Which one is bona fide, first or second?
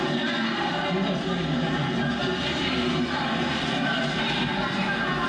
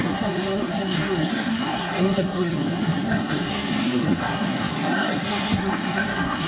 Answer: first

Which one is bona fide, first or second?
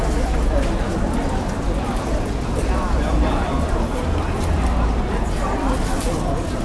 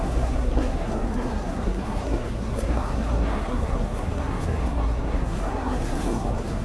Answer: first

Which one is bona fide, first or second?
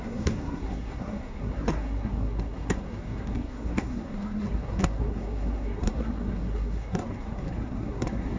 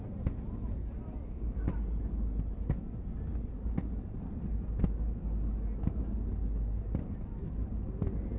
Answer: second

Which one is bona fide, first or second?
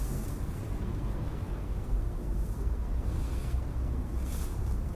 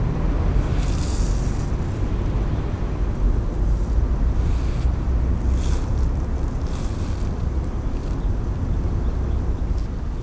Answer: second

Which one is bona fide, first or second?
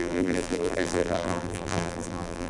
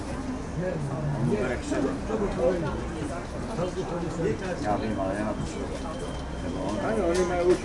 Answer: second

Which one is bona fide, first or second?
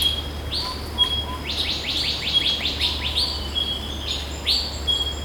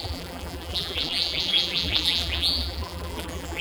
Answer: first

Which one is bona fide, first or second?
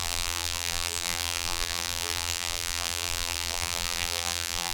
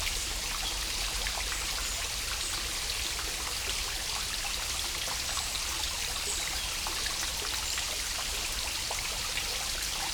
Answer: second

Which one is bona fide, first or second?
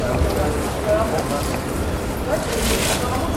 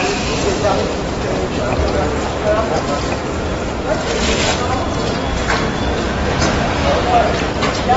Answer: first